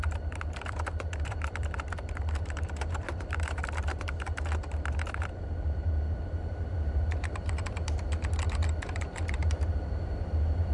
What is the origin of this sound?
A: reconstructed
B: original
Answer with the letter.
A